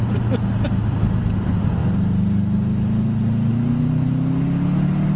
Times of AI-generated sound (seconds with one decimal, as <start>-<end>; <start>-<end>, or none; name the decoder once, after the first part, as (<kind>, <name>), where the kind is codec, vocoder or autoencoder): none